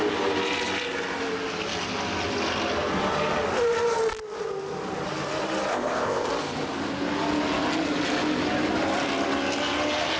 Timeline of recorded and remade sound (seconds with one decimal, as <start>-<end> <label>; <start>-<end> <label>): 0.0-5.7 recorded; 5.7-6.3 remade; 6.3-10.2 recorded